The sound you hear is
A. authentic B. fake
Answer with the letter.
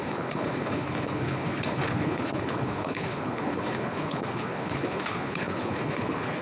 B